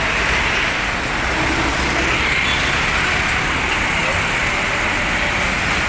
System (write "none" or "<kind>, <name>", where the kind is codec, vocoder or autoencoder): none